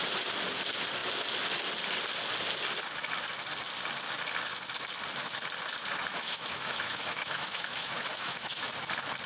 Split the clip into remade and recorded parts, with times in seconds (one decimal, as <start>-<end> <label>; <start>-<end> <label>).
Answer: 0.0-6.1 recorded; 6.1-8.7 remade; 8.7-9.3 recorded